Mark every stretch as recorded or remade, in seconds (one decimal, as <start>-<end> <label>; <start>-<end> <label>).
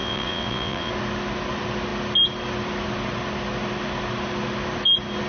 0.0-0.9 remade; 0.9-5.3 recorded